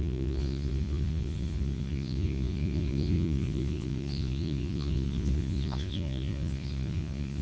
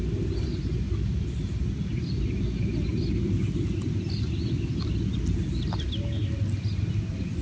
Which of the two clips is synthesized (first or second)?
first